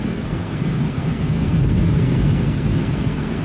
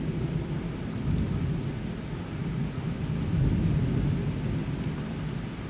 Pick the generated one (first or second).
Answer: first